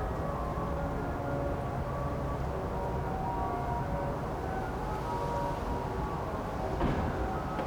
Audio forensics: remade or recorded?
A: recorded